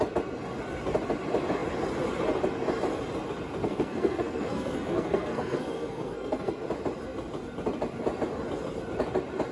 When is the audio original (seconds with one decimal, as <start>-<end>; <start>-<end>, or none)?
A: 0.0-3.6; 6.6-9.5